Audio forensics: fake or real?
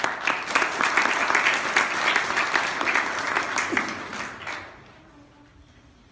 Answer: real